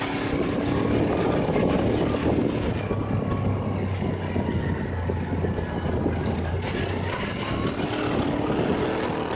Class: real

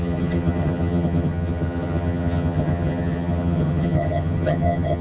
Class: fake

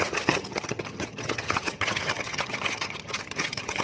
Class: fake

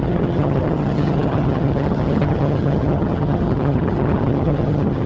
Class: fake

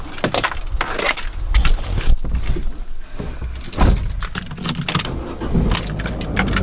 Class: real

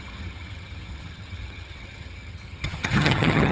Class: fake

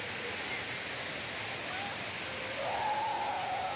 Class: real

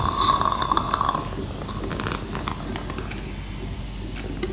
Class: real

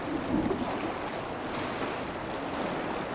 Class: real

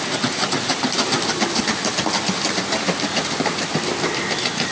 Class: real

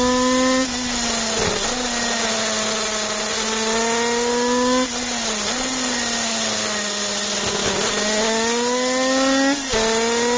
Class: real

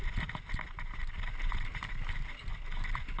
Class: real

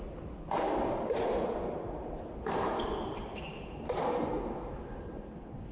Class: real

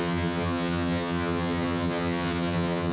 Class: fake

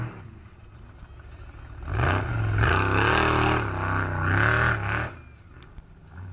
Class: real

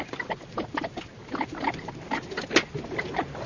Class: real